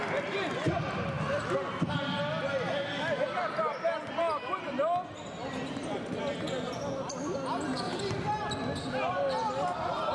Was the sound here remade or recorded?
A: recorded